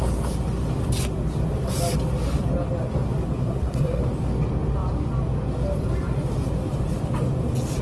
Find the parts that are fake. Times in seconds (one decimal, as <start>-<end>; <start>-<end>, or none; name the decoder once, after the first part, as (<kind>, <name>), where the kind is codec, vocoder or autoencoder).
3.4-4.0 (codec, SNAC)